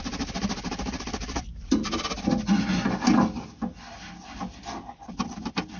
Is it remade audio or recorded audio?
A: recorded